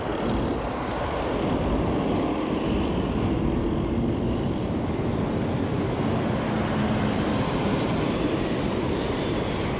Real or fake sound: real